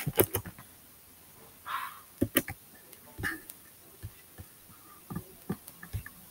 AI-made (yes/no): no